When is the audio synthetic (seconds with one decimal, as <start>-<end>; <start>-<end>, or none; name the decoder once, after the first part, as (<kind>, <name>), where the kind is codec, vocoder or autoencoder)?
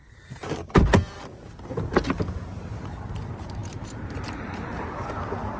0.0-0.8 (vocoder, BigVGAN v2); 2.5-3.2; 3.6-5.1